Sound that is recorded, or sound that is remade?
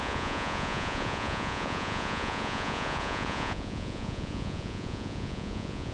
remade